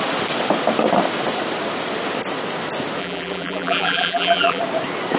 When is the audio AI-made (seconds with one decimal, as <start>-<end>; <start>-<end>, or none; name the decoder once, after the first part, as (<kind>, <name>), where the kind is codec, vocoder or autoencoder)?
3.0-4.6 (vocoder, BigVGAN v2)